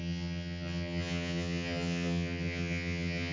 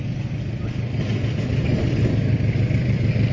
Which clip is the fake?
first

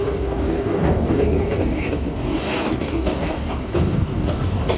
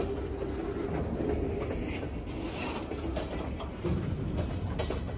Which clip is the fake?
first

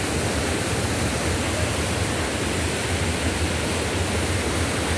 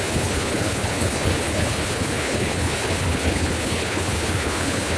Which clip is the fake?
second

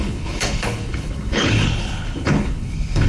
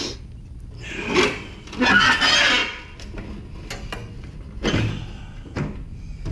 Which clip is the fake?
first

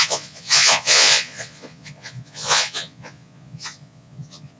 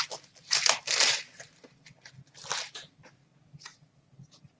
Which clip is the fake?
first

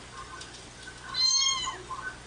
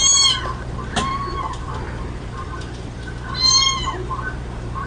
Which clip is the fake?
second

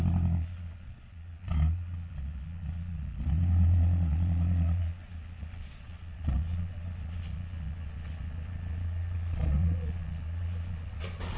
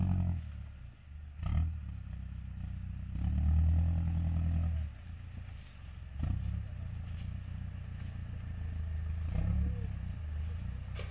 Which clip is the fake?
first